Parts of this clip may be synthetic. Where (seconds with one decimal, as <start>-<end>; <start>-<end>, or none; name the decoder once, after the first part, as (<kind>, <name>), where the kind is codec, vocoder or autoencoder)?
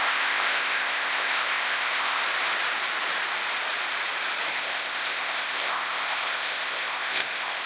0.0-2.2 (codec, ZipCodec); 4.5-7.7